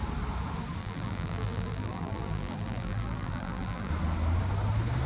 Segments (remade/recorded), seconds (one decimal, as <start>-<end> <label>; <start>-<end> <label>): 0.0-0.8 recorded; 0.8-3.9 remade; 3.9-5.1 recorded